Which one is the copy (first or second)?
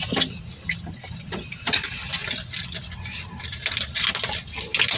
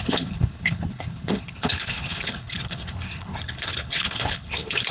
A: second